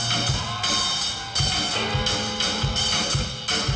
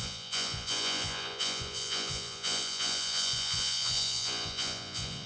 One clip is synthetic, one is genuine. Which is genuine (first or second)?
first